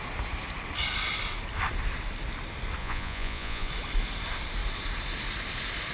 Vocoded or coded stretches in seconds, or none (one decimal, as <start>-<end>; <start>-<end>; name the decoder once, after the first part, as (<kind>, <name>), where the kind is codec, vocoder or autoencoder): 2.8-3.7 (vocoder, Vocos)